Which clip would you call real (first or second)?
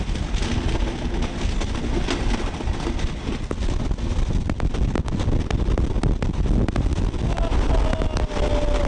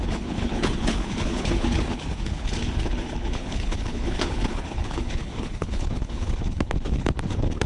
first